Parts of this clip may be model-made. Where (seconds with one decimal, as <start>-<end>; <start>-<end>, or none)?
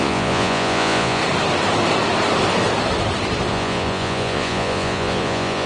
0.0-1.2; 3.5-5.7